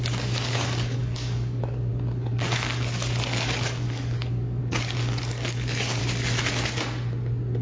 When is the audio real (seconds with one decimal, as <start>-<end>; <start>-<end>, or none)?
6.0-7.6